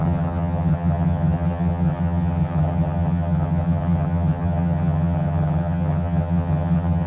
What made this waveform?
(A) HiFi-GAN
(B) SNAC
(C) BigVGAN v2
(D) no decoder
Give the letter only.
A